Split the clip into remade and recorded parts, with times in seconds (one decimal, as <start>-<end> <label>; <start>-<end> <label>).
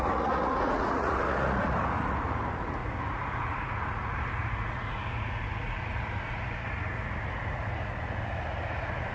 0.0-9.1 remade